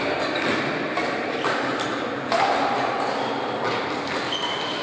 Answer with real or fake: real